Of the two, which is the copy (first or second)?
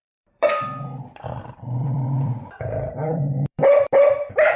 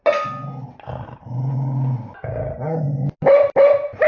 first